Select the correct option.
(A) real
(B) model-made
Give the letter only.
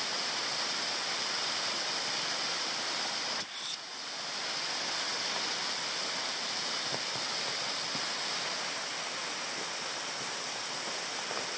A